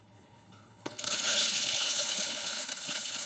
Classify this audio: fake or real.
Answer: fake